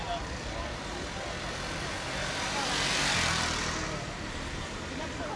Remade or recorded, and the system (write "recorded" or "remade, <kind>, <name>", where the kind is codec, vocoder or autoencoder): recorded